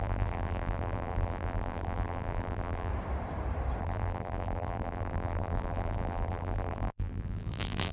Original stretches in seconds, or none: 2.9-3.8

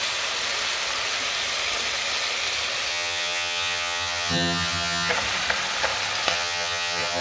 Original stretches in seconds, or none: 0.0-2.9; 5.1-6.3